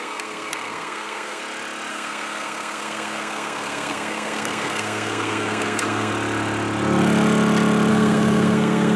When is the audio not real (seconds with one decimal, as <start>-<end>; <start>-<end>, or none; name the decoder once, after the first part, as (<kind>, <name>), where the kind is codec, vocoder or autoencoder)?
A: 0.0-1.4 (codec, SNAC); 1.9-6.1; 7.9-9.0